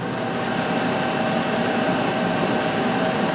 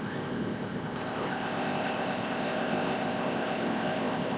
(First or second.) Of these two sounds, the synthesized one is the second